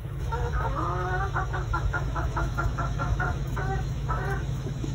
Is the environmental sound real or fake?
fake